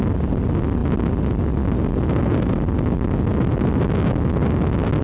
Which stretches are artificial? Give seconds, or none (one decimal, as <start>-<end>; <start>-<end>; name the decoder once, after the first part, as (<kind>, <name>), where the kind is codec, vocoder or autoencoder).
none